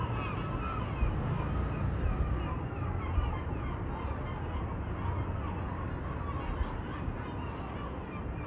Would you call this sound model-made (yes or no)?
no